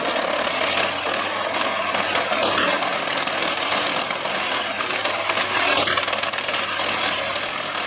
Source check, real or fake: real